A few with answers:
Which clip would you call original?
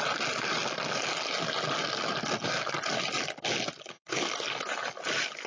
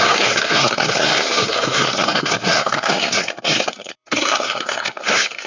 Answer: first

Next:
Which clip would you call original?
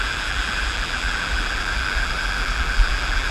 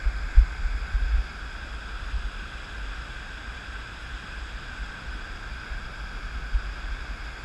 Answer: second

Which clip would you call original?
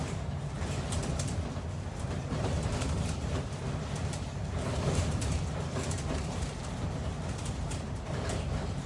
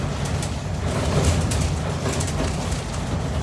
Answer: second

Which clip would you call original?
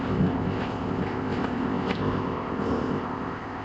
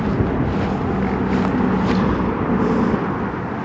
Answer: second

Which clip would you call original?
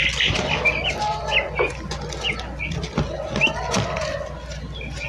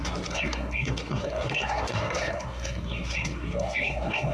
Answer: first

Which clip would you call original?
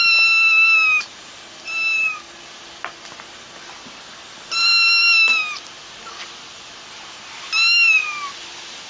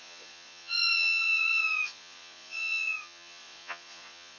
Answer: first